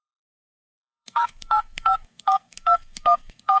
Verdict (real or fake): fake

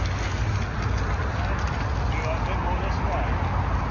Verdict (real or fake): real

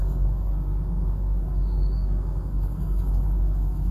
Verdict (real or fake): fake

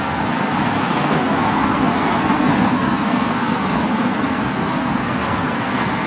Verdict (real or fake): fake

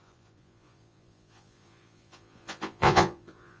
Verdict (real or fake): fake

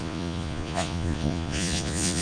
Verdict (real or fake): fake